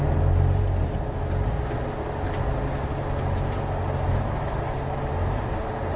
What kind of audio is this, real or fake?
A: real